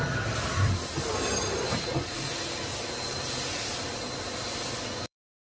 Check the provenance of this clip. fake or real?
fake